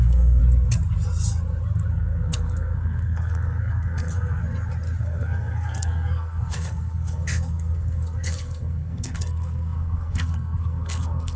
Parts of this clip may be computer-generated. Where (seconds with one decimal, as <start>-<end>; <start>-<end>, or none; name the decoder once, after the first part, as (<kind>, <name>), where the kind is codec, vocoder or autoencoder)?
0.0-0.4 (codec, SNAC); 1.9-4.4; 5.0-11.4